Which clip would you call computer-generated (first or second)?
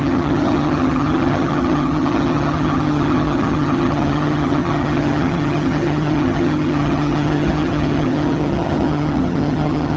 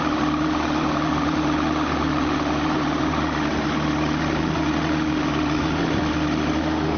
first